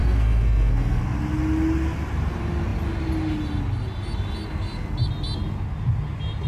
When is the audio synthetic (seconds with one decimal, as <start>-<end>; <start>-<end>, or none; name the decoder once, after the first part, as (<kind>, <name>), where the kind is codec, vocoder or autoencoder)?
0.0-1.0 (codec, SNAC)

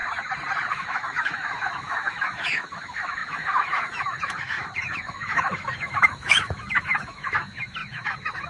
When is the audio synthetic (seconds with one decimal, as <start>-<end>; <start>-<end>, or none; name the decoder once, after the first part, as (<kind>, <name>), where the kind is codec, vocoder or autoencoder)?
0.7-8.5 (autoencoder, DAC-VAE)

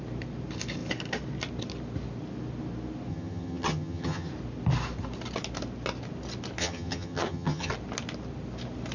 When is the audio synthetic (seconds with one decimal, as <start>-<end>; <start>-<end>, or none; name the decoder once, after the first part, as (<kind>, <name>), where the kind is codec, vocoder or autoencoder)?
3.1-4.3 (vocoder, HiFi-GAN); 6.6-7.7

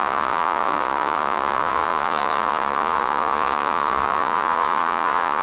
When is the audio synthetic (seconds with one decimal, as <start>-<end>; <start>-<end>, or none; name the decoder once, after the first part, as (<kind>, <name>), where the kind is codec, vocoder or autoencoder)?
0.0-5.4 (vocoder, Vocos)